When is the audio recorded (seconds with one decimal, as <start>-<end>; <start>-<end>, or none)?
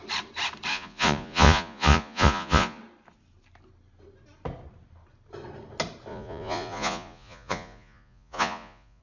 0.0-0.7; 2.8-6.1